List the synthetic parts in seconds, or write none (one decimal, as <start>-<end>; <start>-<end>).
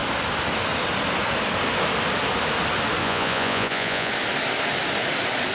3.0-4.1